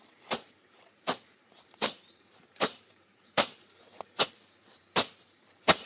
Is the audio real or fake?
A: fake